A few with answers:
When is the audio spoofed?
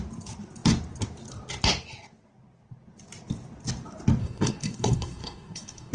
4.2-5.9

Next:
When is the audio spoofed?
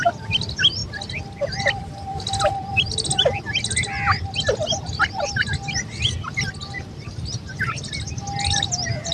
none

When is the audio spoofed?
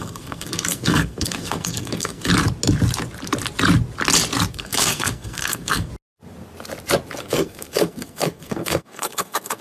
0.0-2.3; 4.5-5.9; 7.2-9.6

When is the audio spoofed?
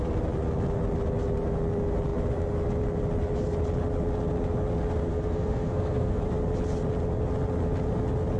5.1-6.2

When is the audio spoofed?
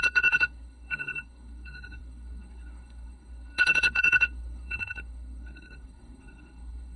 0.0-7.0